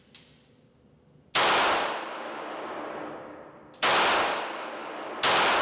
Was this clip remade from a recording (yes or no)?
no